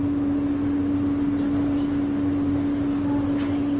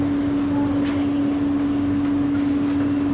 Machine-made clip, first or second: first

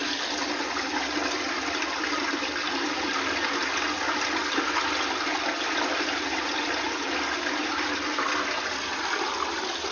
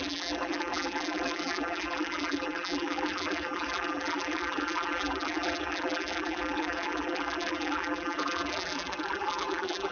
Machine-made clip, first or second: second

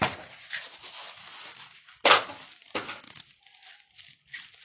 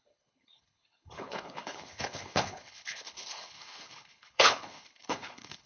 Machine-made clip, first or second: second